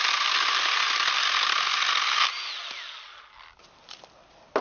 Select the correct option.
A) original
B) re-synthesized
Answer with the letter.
A